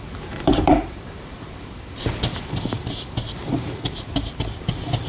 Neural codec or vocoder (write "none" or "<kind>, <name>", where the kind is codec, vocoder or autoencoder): vocoder, BigVGAN v2